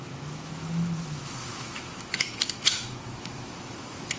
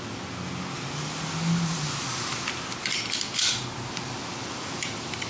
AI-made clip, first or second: first